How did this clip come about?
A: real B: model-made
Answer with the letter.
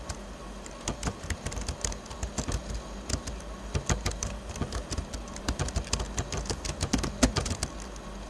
A